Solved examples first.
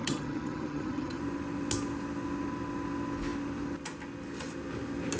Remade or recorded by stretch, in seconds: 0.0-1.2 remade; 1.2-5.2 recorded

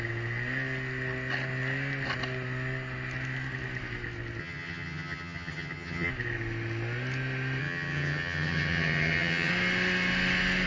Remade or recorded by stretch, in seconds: 0.0-4.4 recorded; 4.4-6.1 remade; 6.1-7.6 recorded; 7.6-9.5 remade; 9.5-10.7 recorded

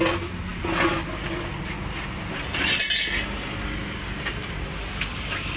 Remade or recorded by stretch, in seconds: 0.0-5.6 recorded

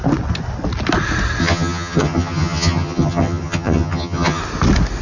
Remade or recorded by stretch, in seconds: 0.0-1.4 recorded; 1.4-4.4 remade; 4.4-5.0 recorded